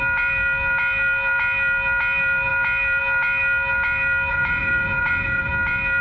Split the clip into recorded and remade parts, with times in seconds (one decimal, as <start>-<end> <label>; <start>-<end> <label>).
0.0-4.3 recorded; 4.3-5.5 remade; 5.5-6.0 recorded